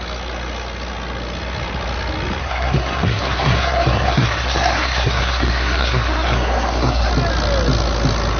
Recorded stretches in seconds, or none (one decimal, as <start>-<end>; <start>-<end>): 0.0-2.4; 7.1-8.4